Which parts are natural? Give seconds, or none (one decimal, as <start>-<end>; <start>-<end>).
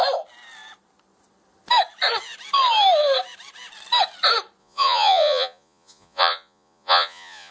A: 0.0-4.6